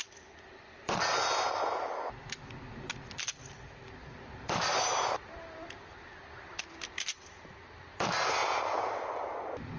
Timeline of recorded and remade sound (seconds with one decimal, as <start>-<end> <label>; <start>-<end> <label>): 0.0-4.0 recorded; 4.0-6.6 remade; 6.6-9.8 recorded

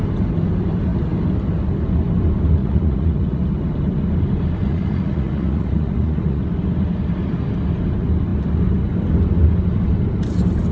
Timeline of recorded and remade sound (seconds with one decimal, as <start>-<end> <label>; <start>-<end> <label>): 0.0-2.6 recorded; 2.6-3.4 remade; 3.4-4.6 recorded; 4.6-6.4 remade; 6.4-10.7 recorded

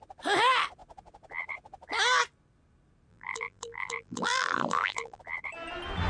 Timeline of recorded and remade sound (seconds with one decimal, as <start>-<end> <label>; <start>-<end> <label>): 0.0-3.1 recorded; 3.1-5.2 remade; 5.2-6.1 recorded

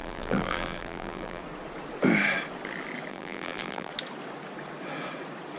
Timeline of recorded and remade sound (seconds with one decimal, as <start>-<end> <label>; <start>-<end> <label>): 0.0-1.4 remade; 1.4-3.1 recorded; 3.1-3.9 remade; 3.9-5.6 recorded

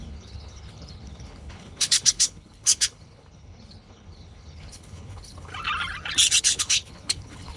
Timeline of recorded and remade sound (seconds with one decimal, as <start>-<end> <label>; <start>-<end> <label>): 0.0-5.5 remade; 5.5-6.4 recorded; 6.4-7.6 remade

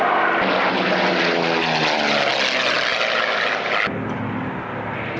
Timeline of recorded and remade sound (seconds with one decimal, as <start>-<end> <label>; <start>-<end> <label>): 0.0-5.2 recorded